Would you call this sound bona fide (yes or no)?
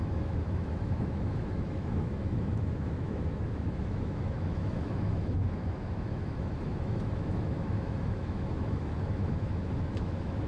no